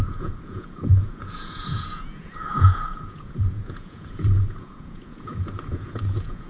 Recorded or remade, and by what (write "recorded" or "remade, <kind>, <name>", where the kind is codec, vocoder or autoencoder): remade, vocoder, Vocos